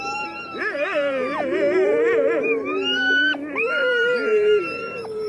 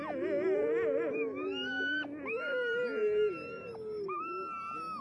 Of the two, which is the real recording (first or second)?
second